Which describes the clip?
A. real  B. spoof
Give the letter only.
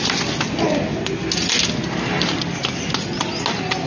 A